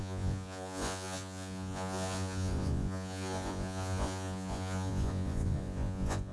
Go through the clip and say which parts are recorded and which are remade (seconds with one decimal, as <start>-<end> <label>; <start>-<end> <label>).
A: 0.0-6.3 remade